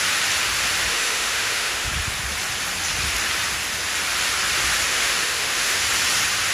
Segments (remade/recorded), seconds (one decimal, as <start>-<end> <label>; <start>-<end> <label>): 0.0-0.9 recorded; 0.9-1.9 remade; 1.9-4.9 recorded; 4.9-5.8 remade; 5.8-6.5 recorded